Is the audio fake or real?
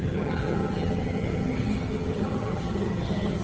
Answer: fake